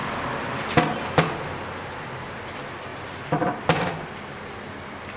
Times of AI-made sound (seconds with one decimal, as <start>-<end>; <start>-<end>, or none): 2.9-3.6